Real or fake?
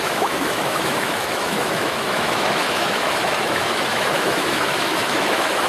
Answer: fake